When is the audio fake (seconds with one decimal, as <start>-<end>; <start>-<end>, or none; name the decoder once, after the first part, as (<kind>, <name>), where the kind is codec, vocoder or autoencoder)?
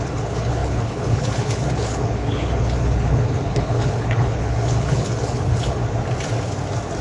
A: 0.0-5.8 (codec, HILCodec)